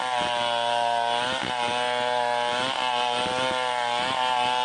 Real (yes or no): yes